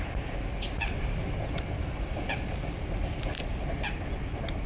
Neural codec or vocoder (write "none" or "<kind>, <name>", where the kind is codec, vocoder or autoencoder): none